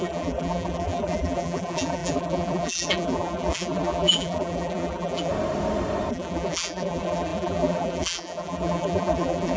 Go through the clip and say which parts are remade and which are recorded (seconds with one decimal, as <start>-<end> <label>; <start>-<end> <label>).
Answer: 0.0-5.3 remade; 5.3-6.1 recorded; 6.1-9.6 remade